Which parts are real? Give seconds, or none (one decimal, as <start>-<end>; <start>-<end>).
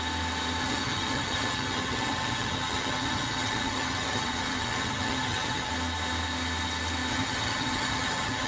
0.0-0.6; 5.7-7.1